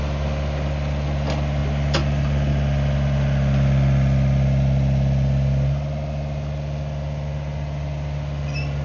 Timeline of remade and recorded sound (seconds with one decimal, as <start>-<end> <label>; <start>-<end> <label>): 0.0-8.8 recorded